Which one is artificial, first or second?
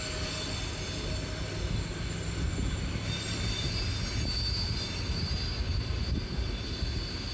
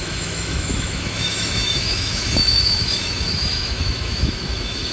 second